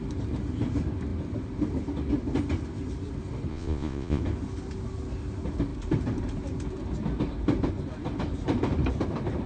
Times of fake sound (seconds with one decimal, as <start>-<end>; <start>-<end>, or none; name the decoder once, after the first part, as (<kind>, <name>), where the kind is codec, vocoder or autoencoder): 3.5-4.2 (vocoder, Vocos)